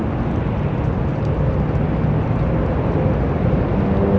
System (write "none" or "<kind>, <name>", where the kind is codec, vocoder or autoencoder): none